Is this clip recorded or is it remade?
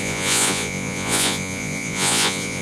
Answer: remade